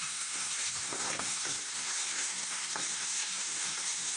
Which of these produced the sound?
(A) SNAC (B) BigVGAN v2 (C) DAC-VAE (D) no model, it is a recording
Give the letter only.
A